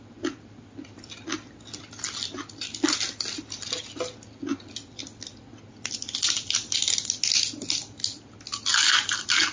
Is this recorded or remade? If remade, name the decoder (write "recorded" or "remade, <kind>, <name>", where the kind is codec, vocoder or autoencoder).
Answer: recorded